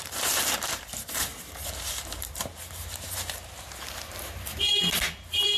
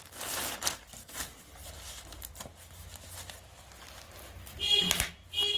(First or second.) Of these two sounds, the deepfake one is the first